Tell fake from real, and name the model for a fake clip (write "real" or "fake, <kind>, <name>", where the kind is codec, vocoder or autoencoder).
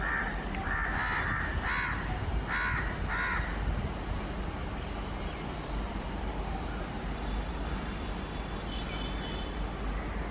real